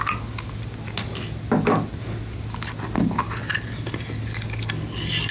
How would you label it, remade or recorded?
recorded